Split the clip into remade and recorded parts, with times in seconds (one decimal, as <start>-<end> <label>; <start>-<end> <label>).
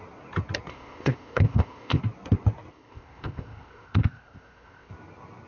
0.0-0.7 recorded; 0.7-2.0 remade; 2.0-2.7 recorded; 2.7-4.9 remade; 4.9-5.5 recorded